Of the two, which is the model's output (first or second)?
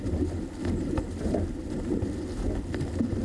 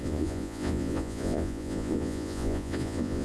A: second